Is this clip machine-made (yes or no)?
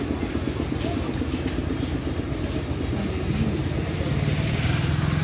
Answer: no